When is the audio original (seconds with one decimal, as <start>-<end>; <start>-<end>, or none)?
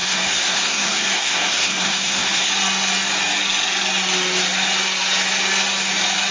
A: 2.5-6.3